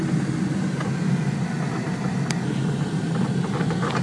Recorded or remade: recorded